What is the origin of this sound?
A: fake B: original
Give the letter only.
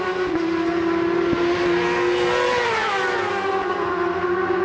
B